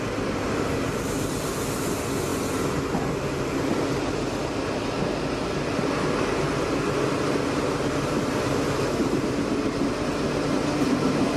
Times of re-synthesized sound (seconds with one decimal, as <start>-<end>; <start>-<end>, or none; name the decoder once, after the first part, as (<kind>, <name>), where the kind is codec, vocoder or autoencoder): none